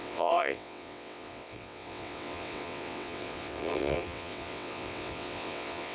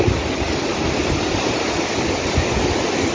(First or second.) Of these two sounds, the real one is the second